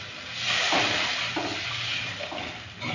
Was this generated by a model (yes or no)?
no